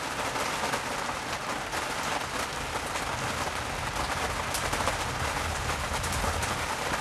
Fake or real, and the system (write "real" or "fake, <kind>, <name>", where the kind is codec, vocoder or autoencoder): real